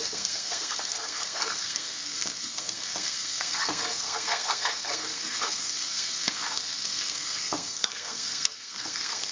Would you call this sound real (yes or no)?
no